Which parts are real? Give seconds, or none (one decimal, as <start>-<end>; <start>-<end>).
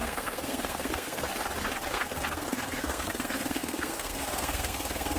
1.3-1.9